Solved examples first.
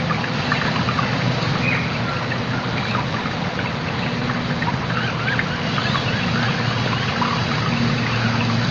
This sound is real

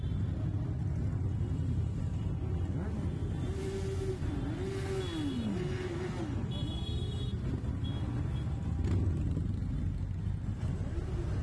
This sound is real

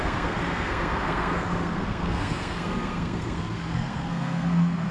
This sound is fake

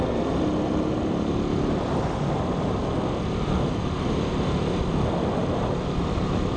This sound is real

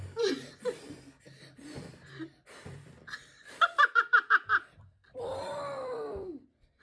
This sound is fake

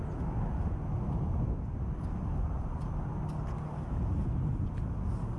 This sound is real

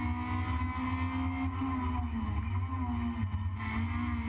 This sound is real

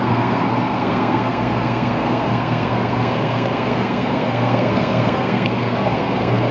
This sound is fake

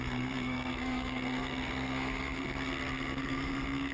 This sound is fake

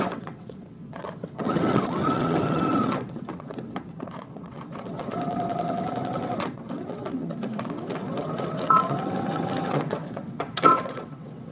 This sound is fake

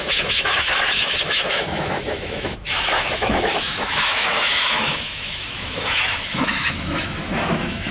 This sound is fake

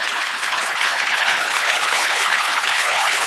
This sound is fake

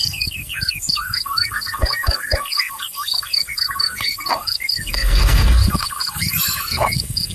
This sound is fake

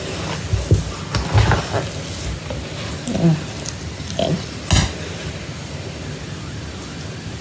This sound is real